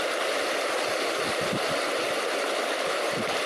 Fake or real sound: real